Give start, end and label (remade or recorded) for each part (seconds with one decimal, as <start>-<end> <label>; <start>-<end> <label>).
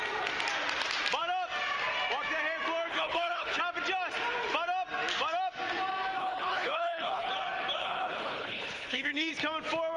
0.0-2.9 recorded; 2.9-3.6 remade; 3.6-6.2 recorded; 6.2-7.3 remade; 7.3-7.8 recorded; 7.8-9.3 remade; 9.3-10.0 recorded